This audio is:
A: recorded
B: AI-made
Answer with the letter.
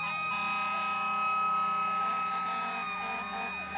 A